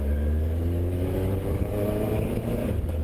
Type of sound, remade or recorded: remade